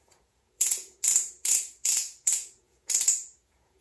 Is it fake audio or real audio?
fake